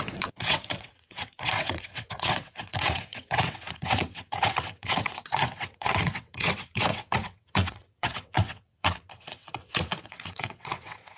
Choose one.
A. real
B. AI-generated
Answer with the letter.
B